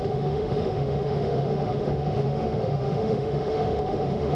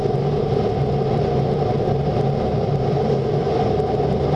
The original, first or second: second